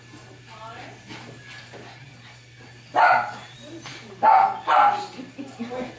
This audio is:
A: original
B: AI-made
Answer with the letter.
A